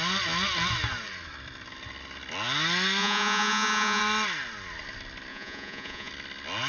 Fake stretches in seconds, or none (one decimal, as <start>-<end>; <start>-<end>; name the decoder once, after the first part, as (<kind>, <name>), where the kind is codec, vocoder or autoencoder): 3.0-4.0 (vocoder, Vocos); 5.3-6.1